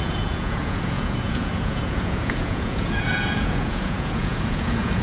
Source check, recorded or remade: remade